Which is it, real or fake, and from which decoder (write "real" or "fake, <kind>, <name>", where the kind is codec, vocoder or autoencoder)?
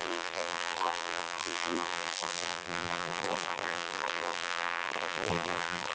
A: fake, vocoder, BigVGAN v2